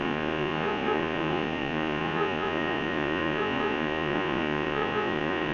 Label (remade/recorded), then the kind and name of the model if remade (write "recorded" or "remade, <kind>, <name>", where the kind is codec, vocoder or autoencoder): remade, vocoder, Vocos